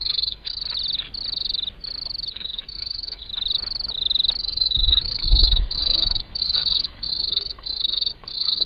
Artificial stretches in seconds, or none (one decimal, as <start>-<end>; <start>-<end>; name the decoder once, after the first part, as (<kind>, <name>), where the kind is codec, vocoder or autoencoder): 0.0-0.6 (codec, SNAC); 2.3-3.3; 4.4-8.7